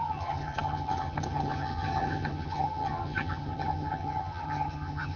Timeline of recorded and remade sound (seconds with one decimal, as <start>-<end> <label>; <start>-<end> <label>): 0.0-5.2 remade